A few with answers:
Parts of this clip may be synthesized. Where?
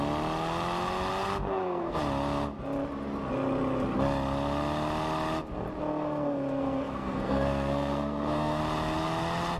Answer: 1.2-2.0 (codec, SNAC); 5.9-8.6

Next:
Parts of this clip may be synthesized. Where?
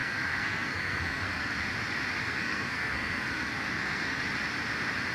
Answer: 0.0-1.5 (codec, SNAC); 2.2-4.2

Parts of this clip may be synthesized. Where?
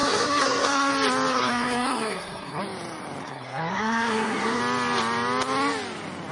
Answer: 0.0-0.9 (codec, SNAC); 1.3-2.6; 3.2-4.6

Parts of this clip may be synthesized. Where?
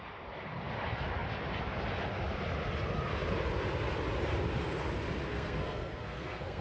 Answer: 5.3-6.6 (codec, SNAC)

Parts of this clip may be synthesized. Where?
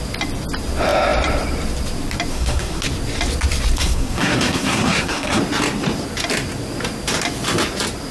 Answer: 2.3-2.8 (codec, SNAC); 3.8-5.4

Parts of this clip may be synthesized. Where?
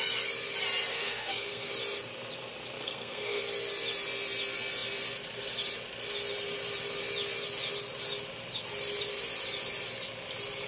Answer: 0.9-1.7 (codec, SNAC); 2.8-3.4